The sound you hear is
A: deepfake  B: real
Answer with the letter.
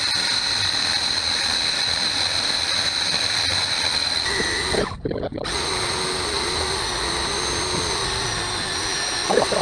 B